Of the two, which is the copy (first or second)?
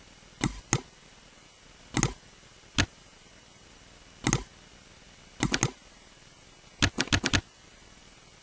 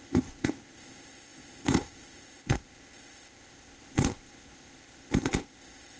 second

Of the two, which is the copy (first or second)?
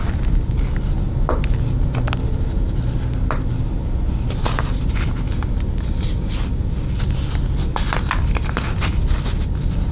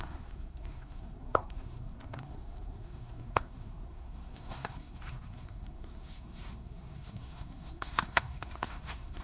second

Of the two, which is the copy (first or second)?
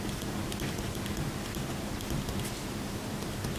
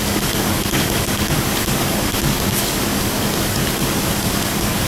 second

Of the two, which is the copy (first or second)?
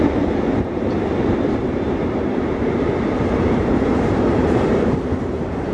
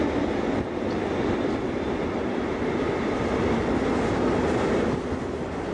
first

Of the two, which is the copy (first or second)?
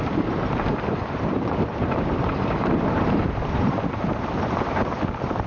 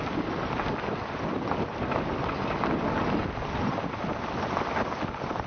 first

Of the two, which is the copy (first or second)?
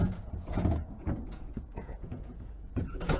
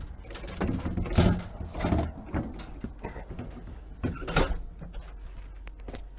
first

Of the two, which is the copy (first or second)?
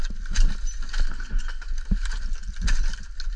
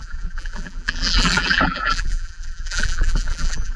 second